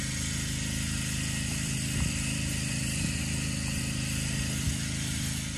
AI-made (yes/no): no